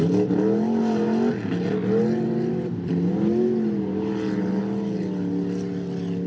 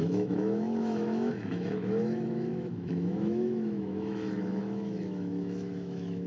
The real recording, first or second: first